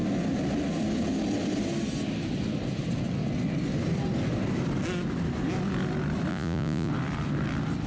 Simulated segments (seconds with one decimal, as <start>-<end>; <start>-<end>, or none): 6.3-6.9